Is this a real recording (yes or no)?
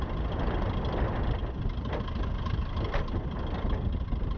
yes